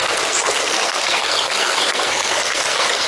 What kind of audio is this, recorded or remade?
remade